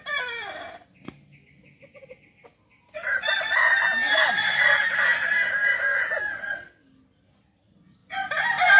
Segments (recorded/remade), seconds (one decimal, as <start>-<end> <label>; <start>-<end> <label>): 0.0-8.0 recorded; 8.0-8.8 remade